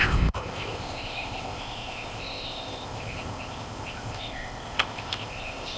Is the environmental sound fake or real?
fake